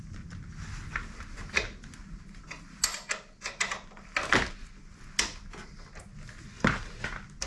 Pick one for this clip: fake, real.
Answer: real